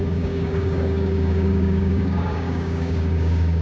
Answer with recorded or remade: remade